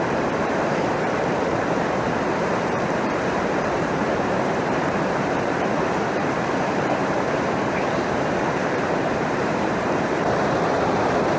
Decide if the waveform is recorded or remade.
remade